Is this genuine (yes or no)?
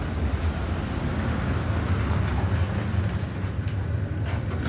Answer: yes